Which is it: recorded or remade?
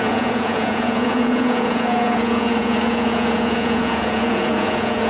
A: remade